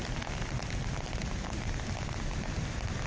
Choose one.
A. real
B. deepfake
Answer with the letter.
A